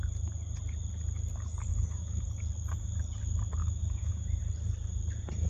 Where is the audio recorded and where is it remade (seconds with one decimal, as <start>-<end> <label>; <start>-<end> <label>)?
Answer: 0.0-1.7 recorded; 1.7-2.2 remade; 2.2-3.6 recorded; 3.6-4.4 remade; 4.4-5.5 recorded